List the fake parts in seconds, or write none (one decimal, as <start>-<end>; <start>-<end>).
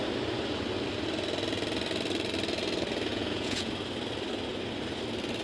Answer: 3.1-3.7